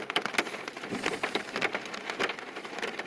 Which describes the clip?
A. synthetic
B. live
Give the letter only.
B